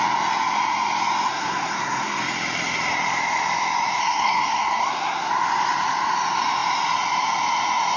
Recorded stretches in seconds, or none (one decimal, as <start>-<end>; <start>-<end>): 0.0-1.3; 2.2-4.0; 5.3-8.0